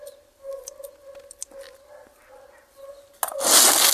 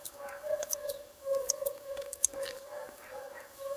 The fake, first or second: second